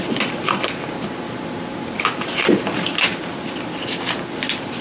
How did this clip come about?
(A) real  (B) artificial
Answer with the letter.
A